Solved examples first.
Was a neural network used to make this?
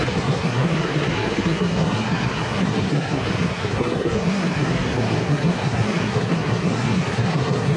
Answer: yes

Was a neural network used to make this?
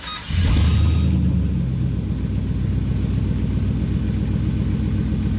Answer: no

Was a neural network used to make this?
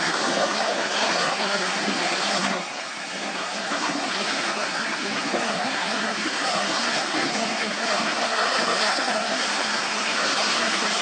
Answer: yes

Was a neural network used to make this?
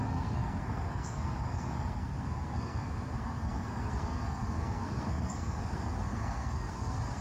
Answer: yes